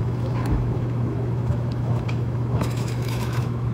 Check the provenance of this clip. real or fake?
fake